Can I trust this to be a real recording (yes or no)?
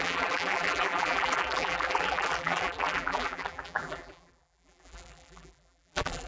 no